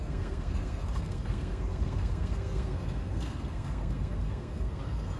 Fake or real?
fake